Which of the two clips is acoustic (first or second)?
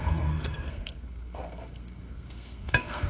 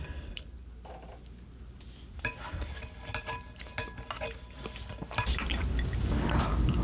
second